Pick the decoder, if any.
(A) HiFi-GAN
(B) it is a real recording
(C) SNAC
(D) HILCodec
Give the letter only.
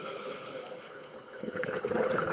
D